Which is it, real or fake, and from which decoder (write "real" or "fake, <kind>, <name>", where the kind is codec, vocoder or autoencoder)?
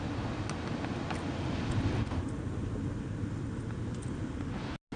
real